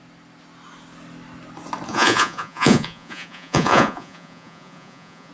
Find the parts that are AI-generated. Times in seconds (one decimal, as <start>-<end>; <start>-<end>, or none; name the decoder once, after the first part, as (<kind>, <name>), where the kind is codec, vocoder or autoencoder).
1.9-5.3 (vocoder, Vocos)